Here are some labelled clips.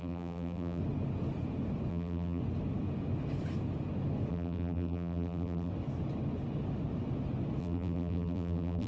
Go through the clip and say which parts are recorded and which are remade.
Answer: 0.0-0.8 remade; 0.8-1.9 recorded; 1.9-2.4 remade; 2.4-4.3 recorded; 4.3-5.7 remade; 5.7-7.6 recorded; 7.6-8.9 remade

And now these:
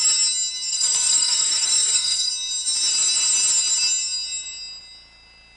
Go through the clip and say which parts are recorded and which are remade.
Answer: 0.0-0.7 recorded; 0.7-2.3 remade; 2.3-5.6 recorded

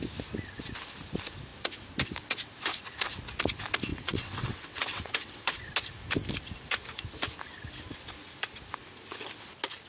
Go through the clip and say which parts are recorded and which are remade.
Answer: 0.0-3.9 recorded; 3.9-5.6 remade; 5.6-9.9 recorded

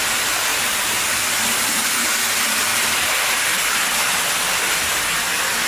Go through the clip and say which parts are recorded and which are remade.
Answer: 0.0-2.7 recorded; 2.7-4.3 remade; 4.3-5.7 recorded

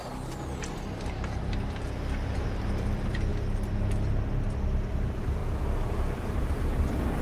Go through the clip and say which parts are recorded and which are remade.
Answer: 0.0-3.3 remade; 3.3-4.9 recorded; 4.9-5.4 remade; 5.4-6.4 recorded; 6.4-7.2 remade

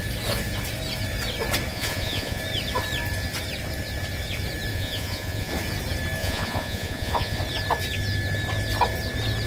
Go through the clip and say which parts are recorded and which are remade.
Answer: 0.0-1.7 recorded; 1.7-2.4 remade; 2.4-4.7 recorded; 4.7-5.5 remade; 5.5-6.2 recorded; 6.2-7.4 remade; 7.4-9.5 recorded

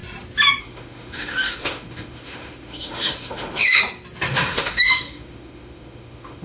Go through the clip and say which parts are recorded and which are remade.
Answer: 0.0-0.6 recorded; 0.6-3.8 remade; 3.8-4.3 recorded; 4.3-6.4 remade